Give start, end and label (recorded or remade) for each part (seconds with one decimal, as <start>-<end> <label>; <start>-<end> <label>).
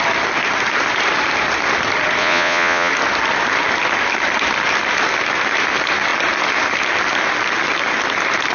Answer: 0.0-2.2 recorded; 2.2-2.9 remade; 2.9-8.5 recorded